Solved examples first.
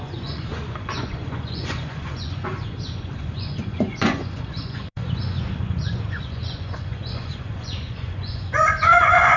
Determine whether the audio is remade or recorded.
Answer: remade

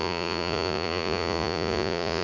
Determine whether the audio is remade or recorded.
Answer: remade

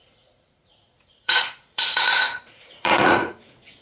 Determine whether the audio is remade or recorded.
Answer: remade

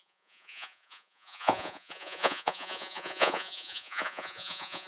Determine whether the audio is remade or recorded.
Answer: remade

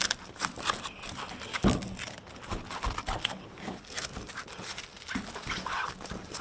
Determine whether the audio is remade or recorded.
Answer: recorded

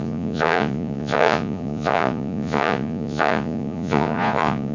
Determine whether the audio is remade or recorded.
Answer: remade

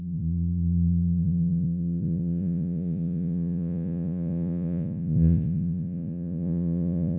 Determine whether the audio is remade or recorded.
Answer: remade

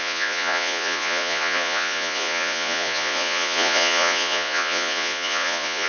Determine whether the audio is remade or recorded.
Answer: remade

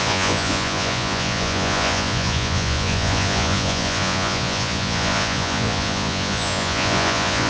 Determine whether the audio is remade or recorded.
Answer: remade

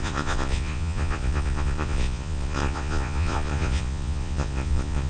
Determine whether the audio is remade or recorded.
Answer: remade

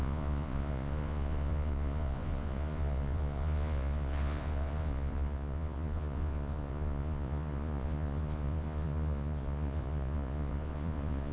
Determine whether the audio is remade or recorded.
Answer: remade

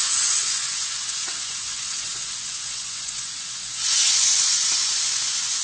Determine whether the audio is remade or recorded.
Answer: remade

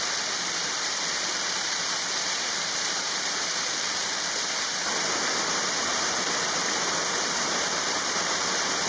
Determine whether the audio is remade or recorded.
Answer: recorded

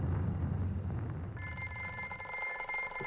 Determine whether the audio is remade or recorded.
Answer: recorded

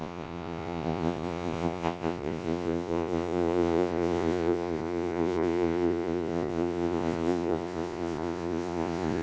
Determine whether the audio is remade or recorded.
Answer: remade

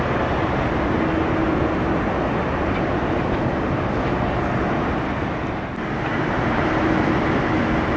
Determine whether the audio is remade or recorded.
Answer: recorded